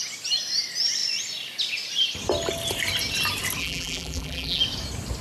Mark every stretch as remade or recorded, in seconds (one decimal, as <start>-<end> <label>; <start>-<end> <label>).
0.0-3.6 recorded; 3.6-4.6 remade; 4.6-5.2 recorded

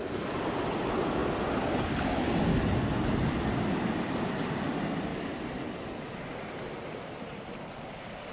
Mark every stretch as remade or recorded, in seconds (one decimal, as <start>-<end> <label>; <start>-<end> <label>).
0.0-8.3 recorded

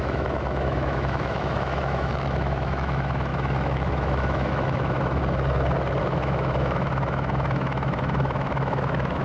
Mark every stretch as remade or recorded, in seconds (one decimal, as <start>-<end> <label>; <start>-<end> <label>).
0.0-5.2 remade; 5.2-6.0 recorded; 6.0-9.2 remade

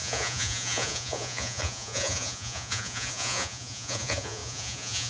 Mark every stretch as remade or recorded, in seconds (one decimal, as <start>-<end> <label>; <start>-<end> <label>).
0.0-5.1 remade

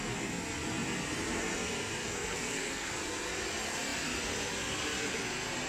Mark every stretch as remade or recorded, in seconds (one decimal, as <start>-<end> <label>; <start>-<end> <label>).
0.0-2.0 recorded; 2.0-2.9 remade; 2.9-5.7 recorded

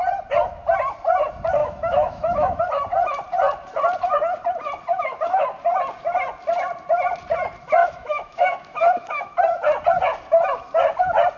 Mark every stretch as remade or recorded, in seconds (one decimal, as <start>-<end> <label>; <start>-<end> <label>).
0.0-1.6 recorded; 1.6-2.6 remade; 2.6-4.9 recorded; 4.9-5.4 remade; 5.4-7.8 recorded; 7.8-9.3 remade; 9.3-11.4 recorded

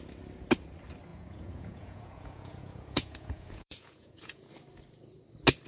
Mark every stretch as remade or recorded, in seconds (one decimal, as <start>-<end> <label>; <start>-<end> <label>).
0.0-1.1 recorded; 1.1-4.5 remade; 4.5-5.7 recorded

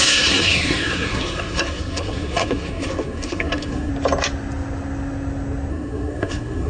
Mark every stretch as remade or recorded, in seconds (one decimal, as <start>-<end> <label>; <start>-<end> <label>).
0.0-3.9 remade; 3.9-5.7 recorded; 5.7-6.7 remade